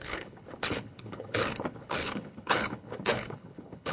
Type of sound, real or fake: fake